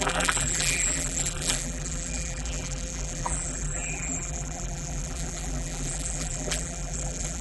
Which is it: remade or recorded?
remade